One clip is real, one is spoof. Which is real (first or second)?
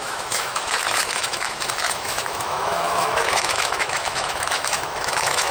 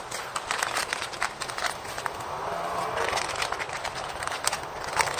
second